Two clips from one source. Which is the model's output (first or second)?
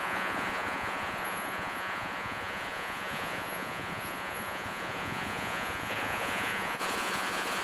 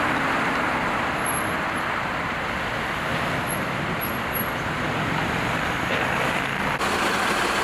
first